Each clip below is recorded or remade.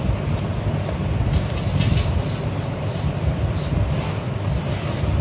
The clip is recorded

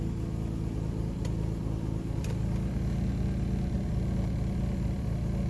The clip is recorded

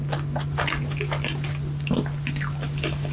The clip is recorded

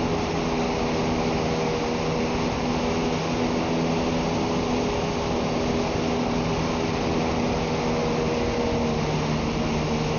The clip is recorded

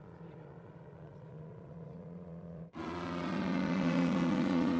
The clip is remade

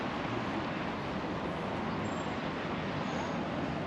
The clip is recorded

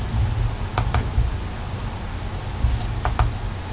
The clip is recorded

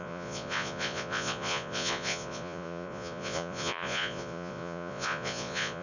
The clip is remade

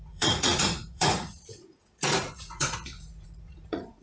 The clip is remade